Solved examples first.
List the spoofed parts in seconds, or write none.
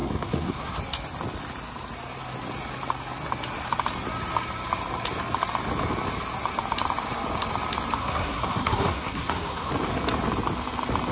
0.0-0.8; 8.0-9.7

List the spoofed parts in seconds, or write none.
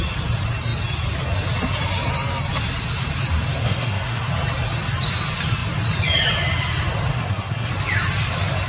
3.6-4.3; 7.1-7.7